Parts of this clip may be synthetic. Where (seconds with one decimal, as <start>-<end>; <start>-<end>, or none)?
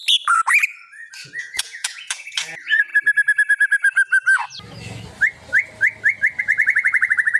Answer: 1.4-2.9; 6.4-7.4